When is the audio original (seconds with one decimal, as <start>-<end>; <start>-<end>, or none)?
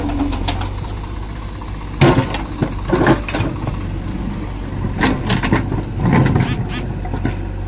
0.0-7.7